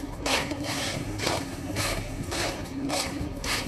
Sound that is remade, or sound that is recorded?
remade